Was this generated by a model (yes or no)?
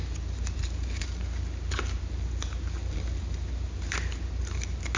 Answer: no